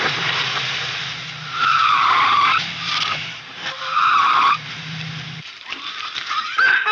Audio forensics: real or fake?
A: fake